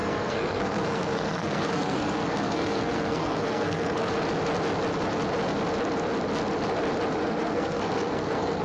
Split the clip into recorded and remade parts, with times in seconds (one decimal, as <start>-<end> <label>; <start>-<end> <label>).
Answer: 0.0-4.1 remade; 4.1-7.2 recorded; 7.2-8.6 remade